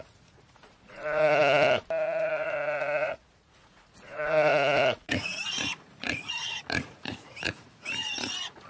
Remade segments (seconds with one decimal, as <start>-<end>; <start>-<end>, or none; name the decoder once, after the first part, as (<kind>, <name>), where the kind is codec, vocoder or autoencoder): 0.0-1.4 (vocoder, Vocos); 2.2-8.7